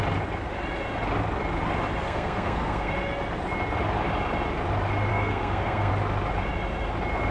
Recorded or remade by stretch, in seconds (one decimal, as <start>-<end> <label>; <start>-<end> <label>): 0.0-2.0 recorded; 2.0-2.9 remade; 2.9-5.1 recorded; 5.1-5.9 remade; 5.9-7.3 recorded